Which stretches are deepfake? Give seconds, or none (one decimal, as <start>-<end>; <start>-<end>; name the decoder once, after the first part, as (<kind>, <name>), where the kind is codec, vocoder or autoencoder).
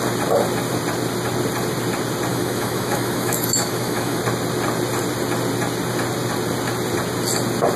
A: 2.3-4.2 (autoencoder, DAC-VAE)